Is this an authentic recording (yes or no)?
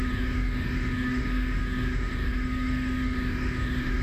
no